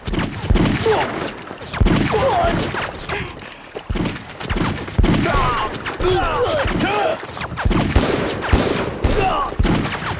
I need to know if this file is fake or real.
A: real